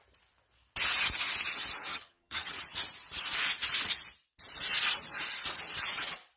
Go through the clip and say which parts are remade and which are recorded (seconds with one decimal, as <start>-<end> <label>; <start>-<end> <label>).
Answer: 0.0-1.9 recorded; 1.9-2.6 remade; 2.6-6.4 recorded